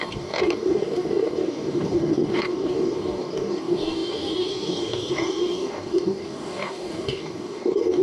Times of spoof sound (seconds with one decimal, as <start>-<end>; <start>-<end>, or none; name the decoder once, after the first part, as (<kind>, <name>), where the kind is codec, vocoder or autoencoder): 0.0-8.0 (codec, DAC)